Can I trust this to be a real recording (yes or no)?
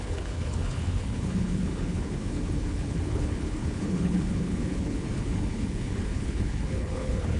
no